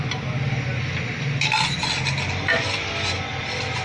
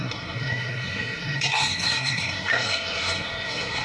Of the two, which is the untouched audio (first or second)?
first